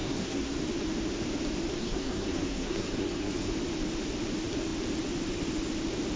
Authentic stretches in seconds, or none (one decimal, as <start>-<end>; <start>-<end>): 0.6-1.8; 3.5-6.2